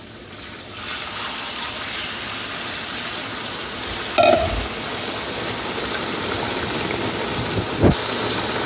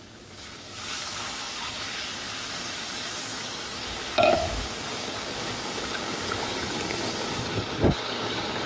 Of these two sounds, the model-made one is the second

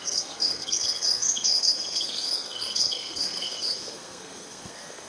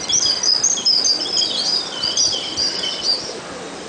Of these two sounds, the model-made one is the first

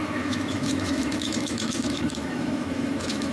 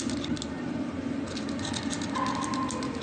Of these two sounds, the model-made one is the first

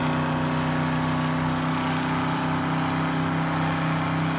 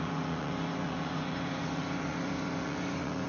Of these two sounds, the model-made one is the second